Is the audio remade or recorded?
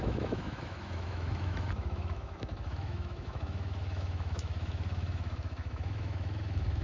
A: remade